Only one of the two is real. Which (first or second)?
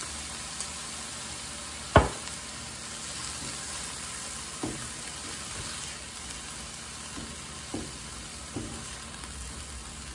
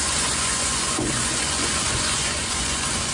first